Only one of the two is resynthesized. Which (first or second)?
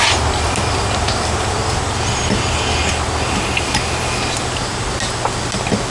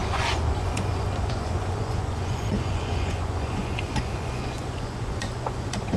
second